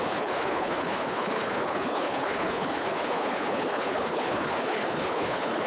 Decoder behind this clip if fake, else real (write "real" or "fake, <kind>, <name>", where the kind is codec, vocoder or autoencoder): fake, codec, HILCodec